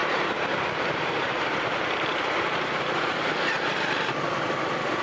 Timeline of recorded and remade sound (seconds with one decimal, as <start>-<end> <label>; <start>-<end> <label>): 0.0-3.7 remade; 3.7-5.0 recorded